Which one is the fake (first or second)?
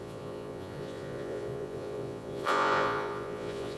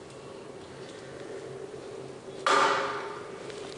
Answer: first